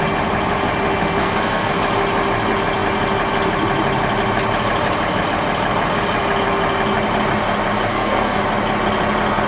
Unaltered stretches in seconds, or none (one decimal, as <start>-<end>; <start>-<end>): 0.0-1.2; 1.7-7.9; 8.4-9.5